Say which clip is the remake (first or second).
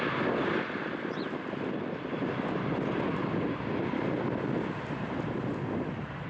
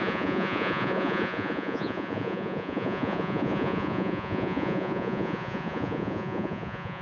second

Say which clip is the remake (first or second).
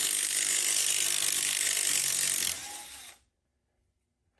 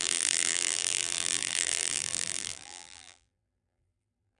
second